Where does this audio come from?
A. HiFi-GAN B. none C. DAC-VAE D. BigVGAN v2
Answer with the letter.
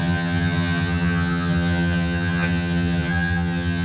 A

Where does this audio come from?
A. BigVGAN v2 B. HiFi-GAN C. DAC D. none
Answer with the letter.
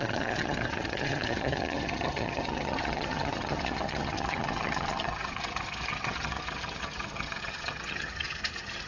B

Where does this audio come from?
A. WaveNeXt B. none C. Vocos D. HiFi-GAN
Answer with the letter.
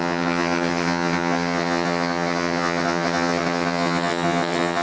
D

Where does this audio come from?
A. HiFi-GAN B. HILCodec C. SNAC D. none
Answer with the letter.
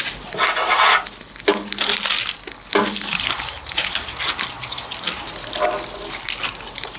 D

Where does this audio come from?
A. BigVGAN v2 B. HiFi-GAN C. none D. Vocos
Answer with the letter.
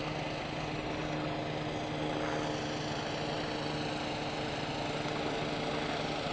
C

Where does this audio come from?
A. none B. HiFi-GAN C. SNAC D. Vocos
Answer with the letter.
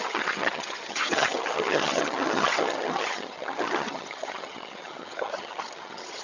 B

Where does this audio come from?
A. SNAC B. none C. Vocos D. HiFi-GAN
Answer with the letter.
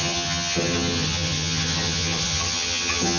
D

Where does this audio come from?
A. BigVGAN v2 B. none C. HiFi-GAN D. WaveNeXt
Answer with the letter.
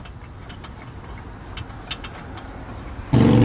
B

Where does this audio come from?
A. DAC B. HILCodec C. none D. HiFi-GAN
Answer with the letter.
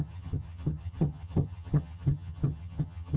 D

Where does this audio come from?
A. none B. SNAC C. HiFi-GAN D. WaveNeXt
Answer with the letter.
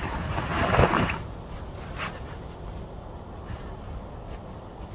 A